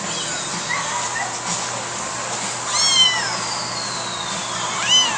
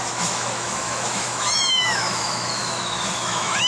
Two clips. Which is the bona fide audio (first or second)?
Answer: first